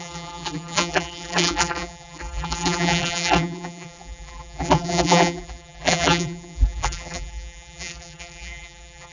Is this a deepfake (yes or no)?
yes